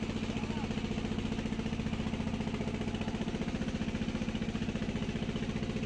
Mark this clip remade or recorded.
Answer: recorded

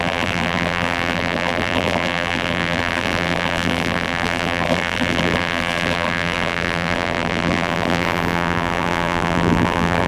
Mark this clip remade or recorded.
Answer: remade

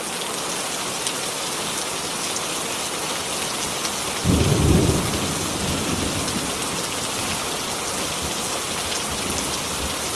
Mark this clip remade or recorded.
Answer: recorded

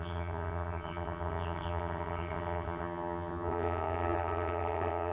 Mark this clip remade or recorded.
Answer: remade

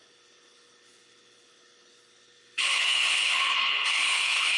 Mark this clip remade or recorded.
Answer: remade